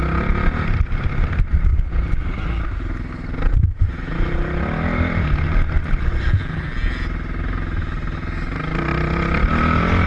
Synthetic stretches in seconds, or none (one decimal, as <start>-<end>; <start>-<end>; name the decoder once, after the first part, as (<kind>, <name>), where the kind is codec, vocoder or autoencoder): none